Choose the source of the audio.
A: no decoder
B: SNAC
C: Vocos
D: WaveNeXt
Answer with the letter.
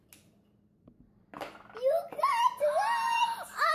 A